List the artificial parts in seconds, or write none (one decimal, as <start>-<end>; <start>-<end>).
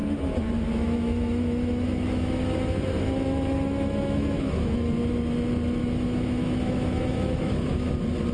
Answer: 0.0-4.9; 5.8-7.9